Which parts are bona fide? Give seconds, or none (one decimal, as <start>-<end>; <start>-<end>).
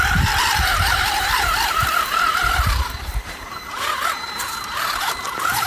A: none